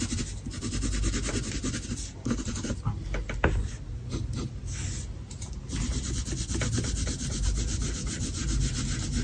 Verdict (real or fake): real